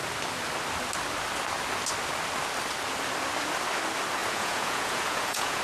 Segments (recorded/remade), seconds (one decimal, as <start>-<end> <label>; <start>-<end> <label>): 0.0-4.2 recorded; 4.2-5.6 remade